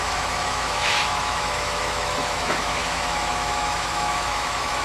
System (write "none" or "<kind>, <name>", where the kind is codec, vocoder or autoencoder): autoencoder, DAC-VAE